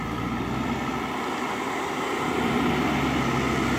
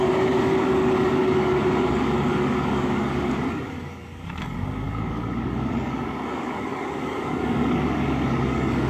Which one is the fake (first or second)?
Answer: second